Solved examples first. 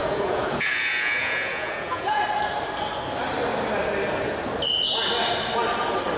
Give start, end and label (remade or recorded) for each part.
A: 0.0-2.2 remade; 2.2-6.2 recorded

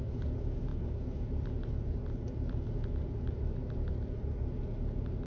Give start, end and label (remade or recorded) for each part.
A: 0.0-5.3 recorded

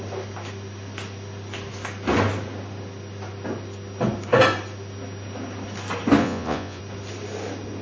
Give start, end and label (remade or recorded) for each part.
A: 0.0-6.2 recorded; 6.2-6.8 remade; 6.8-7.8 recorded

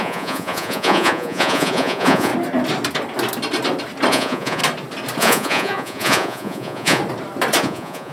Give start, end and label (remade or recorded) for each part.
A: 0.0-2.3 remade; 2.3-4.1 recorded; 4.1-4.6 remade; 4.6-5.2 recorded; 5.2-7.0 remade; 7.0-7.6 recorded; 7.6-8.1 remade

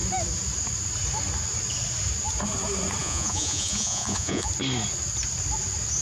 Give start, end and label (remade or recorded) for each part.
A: 0.0-3.0 recorded; 3.0-4.5 remade; 4.5-6.0 recorded